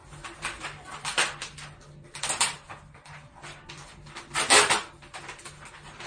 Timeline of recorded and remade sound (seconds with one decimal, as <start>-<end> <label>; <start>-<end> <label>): 0.0-6.1 recorded